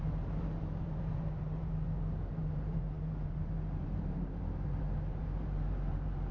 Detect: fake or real fake